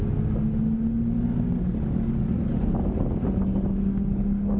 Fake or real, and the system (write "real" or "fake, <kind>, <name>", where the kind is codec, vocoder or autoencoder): real